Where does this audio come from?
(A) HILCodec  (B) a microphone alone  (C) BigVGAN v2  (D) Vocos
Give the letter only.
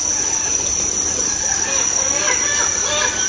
B